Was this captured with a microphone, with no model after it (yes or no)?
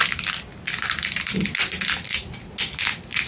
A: yes